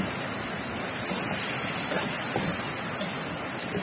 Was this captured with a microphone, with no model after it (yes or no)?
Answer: no